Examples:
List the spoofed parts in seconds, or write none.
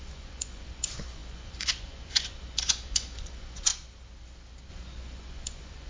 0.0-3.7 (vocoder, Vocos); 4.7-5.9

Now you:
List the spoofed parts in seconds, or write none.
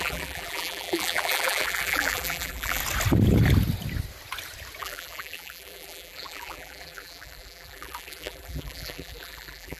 0.0-2.8 (vocoder, BigVGAN v2); 4.8-9.8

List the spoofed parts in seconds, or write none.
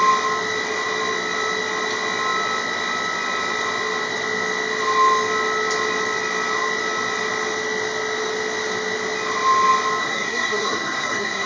10.0-11.5 (codec, SNAC)